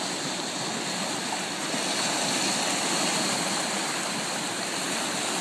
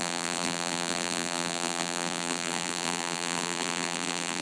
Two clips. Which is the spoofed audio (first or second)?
second